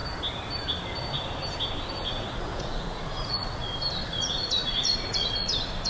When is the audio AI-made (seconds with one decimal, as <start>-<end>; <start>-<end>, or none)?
1.9-3.6; 4.1-5.9